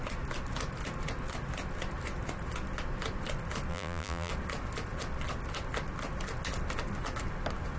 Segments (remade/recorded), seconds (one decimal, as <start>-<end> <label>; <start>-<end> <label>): 0.0-3.7 recorded; 3.7-4.3 remade; 4.3-7.8 recorded

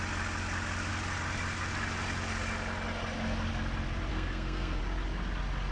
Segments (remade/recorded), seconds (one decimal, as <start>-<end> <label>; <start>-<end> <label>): 0.0-4.1 recorded; 4.1-4.8 remade; 4.8-5.7 recorded

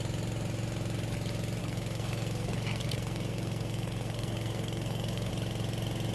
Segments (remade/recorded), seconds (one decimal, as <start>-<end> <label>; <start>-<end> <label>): 0.0-1.6 recorded; 1.6-5.3 remade; 5.3-6.1 recorded

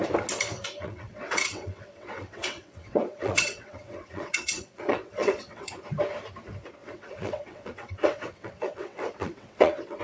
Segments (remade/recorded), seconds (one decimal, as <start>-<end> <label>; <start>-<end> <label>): 0.0-0.8 recorded; 0.8-5.7 remade; 5.7-6.8 recorded; 6.8-10.0 remade

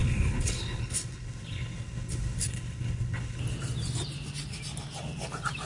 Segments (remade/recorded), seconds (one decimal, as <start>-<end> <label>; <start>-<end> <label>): 0.0-3.4 remade; 3.4-5.7 recorded